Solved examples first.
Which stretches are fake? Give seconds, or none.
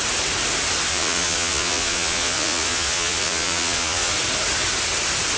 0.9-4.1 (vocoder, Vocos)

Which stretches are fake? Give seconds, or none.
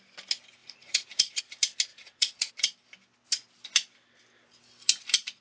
0.6-1.4 (vocoder, Vocos); 1.9-2.5